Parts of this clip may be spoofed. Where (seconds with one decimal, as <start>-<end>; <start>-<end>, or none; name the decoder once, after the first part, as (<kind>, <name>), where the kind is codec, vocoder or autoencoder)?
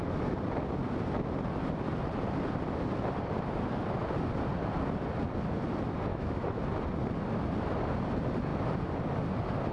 6.1-6.6 (autoencoder, DAC-VAE)